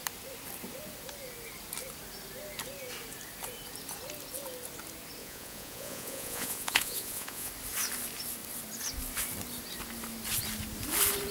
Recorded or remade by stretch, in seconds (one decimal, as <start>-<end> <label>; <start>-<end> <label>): 0.0-5.2 recorded; 5.2-7.5 remade; 7.5-11.3 recorded

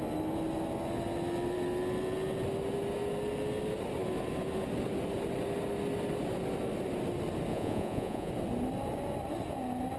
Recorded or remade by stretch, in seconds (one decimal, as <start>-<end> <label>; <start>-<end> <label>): 0.0-7.5 recorded; 7.5-8.3 remade; 8.3-10.0 recorded

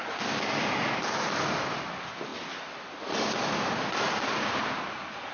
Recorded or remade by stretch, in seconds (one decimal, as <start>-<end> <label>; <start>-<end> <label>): 0.0-5.3 recorded

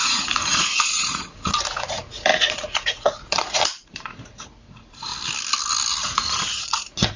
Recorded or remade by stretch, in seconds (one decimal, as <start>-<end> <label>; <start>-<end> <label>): 0.0-5.1 remade; 5.1-6.0 recorded; 6.0-7.2 remade

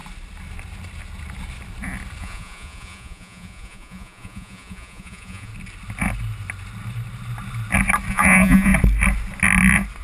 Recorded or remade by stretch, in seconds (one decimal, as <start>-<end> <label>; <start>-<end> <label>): 0.0-2.2 recorded; 2.2-5.5 remade; 5.5-8.1 recorded; 8.1-8.7 remade; 8.7-10.0 recorded

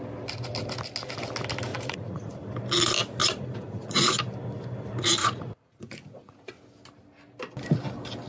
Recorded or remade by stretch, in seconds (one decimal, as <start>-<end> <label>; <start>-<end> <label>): 0.0-1.7 recorded; 1.7-2.3 remade; 2.3-3.2 recorded; 3.2-4.2 remade; 4.2-5.2 recorded; 5.2-6.5 remade; 6.5-8.3 recorded

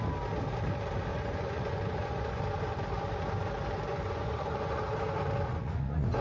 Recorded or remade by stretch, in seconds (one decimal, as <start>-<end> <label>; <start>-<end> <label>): 0.0-1.1 recorded; 1.1-2.4 remade; 2.4-3.9 recorded; 3.9-4.8 remade; 4.8-5.5 recorded; 5.5-6.2 remade

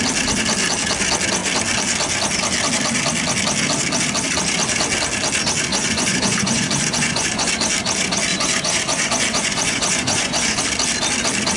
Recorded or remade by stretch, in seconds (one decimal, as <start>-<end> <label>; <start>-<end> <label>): 0.0-5.7 recorded; 5.7-7.5 remade; 7.5-8.3 recorded; 8.3-10.6 remade; 10.6-11.6 recorded